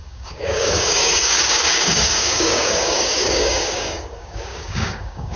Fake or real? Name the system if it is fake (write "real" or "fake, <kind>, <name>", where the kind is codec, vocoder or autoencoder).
fake, codec, DAC